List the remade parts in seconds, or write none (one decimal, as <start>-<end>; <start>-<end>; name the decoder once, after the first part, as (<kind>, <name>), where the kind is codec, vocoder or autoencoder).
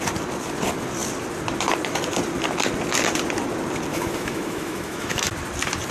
3.9-5.3 (autoencoder, DAC-VAE)